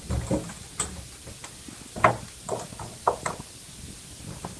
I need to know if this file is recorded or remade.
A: recorded